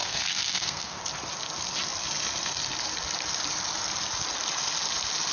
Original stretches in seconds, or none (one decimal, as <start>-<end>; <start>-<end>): 1.0-5.3